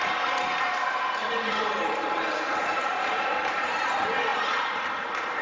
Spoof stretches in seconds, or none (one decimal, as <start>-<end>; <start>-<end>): 1.2-3.9; 4.3-4.9